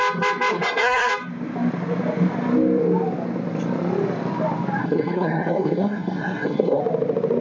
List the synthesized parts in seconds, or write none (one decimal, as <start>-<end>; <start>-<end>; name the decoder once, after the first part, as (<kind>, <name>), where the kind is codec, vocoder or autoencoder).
0.5-1.1 (codec, SNAC); 4.8-6.8